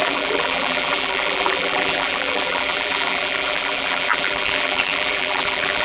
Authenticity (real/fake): fake